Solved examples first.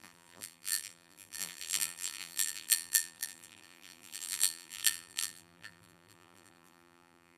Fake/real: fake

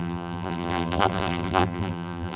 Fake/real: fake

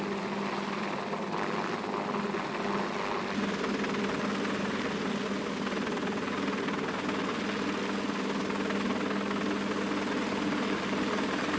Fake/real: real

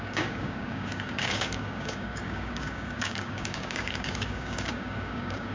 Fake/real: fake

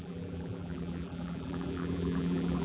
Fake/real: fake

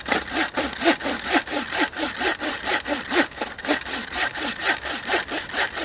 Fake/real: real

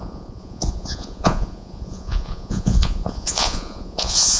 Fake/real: fake